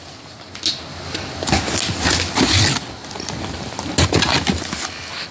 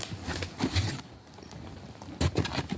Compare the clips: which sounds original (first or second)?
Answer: first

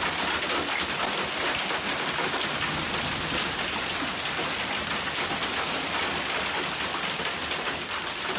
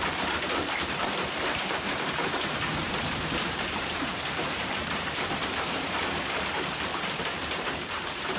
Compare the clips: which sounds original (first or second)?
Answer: first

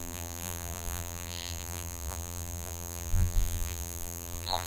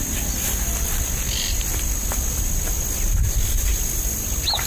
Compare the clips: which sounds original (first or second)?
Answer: second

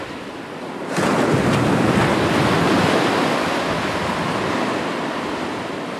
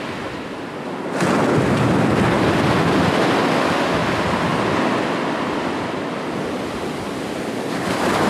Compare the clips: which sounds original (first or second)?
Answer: second